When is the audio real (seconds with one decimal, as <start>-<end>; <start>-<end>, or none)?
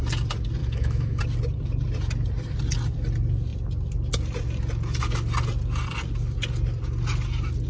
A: 0.0-0.6; 1.2-7.7